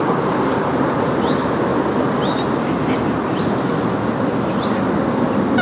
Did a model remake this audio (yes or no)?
no